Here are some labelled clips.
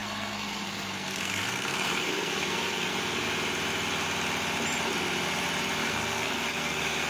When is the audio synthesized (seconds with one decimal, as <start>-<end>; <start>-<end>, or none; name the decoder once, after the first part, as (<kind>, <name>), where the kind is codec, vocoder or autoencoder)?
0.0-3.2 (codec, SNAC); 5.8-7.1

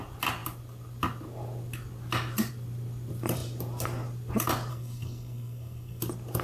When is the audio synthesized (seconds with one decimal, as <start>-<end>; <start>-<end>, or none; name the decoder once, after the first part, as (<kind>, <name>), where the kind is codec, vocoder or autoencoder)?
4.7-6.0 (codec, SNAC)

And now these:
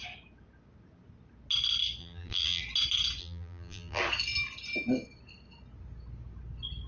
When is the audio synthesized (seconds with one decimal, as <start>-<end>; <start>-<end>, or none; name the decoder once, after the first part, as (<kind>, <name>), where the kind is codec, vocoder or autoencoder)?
2.0-2.6 (vocoder, BigVGAN v2); 3.2-4.0